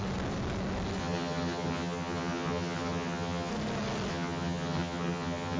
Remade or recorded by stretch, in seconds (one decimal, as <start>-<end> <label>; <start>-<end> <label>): 0.0-1.0 recorded; 1.0-3.5 remade; 3.5-4.1 recorded; 4.1-5.6 remade